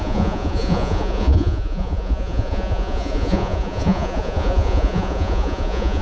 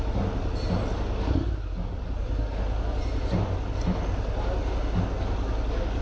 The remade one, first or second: first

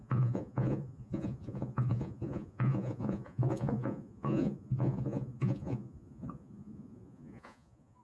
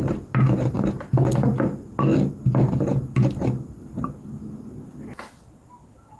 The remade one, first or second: first